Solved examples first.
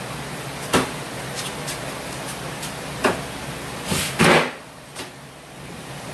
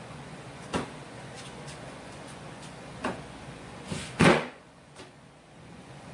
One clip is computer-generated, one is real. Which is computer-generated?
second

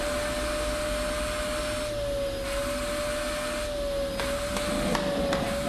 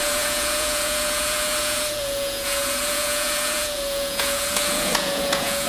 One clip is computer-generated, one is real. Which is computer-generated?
second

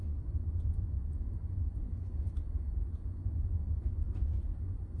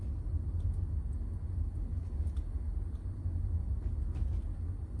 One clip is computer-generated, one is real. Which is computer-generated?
first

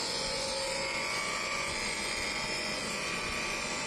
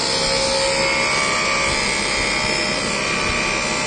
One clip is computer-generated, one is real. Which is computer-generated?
first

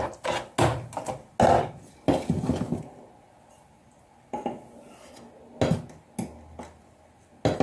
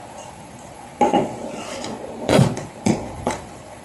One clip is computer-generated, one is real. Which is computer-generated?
second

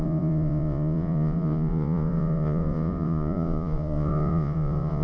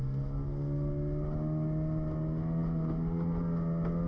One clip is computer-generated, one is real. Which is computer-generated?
first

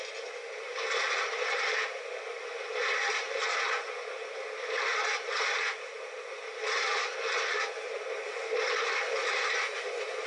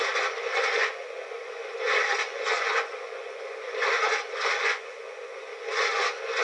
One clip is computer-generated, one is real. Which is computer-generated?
second